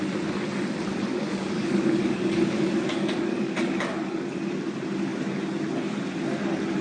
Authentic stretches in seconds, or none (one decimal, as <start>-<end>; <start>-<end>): 0.0-1.1; 4.4-6.8